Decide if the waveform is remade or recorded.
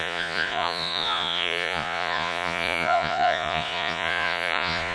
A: remade